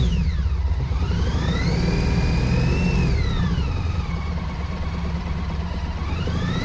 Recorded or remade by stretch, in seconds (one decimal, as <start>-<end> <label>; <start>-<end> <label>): 0.0-6.6 recorded